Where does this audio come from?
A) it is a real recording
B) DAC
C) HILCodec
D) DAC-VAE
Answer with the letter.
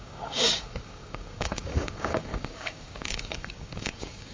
B